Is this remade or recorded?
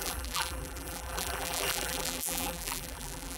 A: remade